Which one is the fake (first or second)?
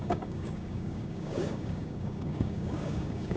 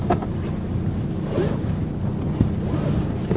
first